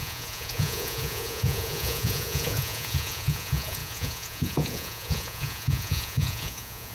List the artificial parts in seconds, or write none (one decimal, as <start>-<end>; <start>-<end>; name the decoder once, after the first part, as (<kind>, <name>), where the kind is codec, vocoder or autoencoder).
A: 0.0-6.9 (vocoder, Vocos)